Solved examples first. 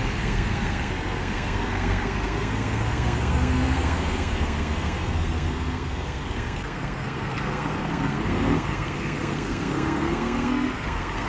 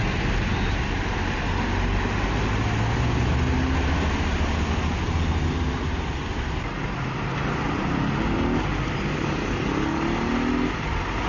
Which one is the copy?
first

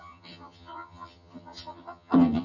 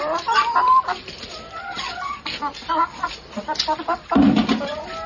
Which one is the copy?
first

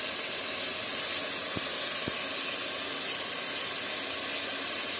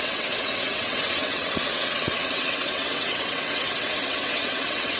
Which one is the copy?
second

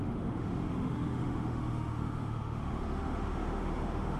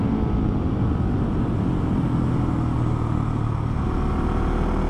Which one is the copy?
first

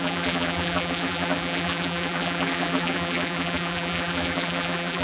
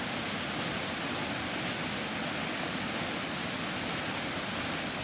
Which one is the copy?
first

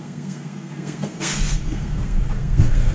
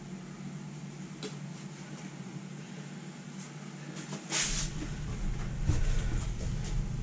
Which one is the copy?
first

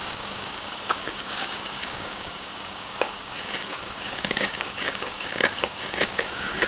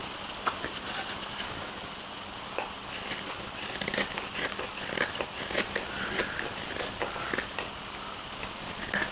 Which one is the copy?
first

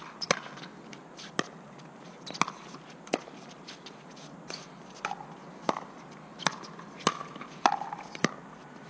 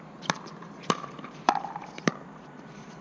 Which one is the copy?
second